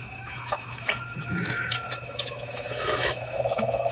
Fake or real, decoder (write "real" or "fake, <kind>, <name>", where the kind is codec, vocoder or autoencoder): fake, autoencoder, DAC-VAE